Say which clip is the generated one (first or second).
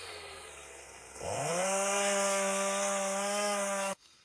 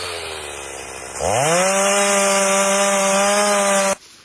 first